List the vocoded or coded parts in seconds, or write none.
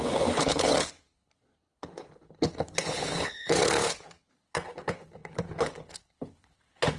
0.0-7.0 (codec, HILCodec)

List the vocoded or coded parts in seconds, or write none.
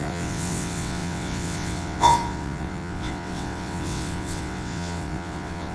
0.0-5.7 (vocoder, WaveNeXt)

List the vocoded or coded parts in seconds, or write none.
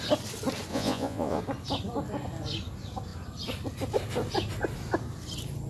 0.7-1.4 (vocoder, Vocos)